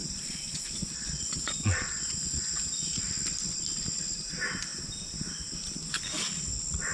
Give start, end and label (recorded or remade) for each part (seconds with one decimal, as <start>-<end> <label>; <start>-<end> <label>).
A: 0.0-3.0 remade; 3.0-6.9 recorded